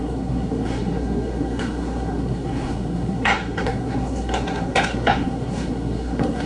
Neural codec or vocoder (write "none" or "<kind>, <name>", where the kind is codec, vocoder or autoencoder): codec, SNAC